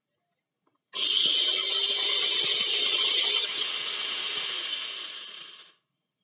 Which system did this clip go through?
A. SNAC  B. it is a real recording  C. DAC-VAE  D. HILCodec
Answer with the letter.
B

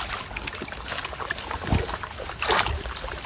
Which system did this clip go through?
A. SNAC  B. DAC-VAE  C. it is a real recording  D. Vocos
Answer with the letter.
C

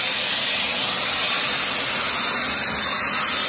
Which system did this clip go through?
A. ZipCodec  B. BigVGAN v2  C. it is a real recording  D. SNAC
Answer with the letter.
C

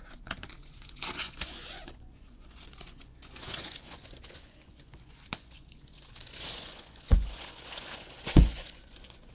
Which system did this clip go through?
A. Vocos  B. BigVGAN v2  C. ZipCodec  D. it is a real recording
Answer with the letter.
A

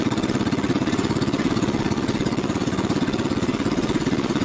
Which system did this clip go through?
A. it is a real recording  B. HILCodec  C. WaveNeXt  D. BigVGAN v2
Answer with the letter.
C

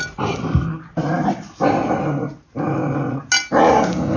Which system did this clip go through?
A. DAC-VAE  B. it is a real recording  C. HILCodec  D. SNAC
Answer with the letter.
B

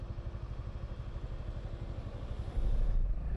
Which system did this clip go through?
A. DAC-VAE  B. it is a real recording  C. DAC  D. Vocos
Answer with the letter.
B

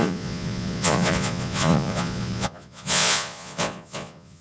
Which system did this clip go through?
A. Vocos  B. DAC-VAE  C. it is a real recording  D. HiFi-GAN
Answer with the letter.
A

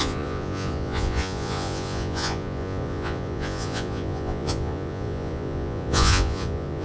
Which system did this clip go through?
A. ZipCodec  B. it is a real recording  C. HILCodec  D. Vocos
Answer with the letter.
D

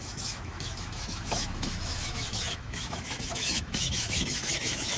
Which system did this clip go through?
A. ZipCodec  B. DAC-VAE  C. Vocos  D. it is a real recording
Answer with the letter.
B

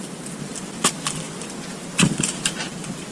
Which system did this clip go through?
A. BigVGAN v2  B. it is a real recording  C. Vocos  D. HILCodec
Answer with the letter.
B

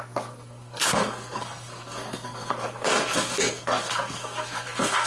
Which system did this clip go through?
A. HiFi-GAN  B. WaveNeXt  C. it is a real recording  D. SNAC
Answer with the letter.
D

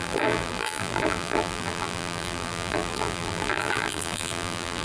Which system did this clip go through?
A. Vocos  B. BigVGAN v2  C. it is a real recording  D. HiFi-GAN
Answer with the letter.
B